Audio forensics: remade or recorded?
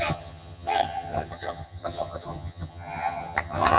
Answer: remade